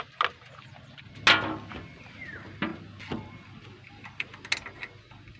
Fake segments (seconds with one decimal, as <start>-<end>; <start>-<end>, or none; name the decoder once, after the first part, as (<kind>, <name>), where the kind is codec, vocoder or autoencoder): none